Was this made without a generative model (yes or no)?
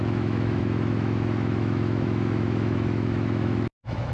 no